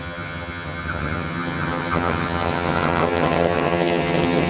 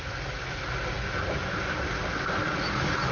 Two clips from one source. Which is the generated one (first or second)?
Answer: first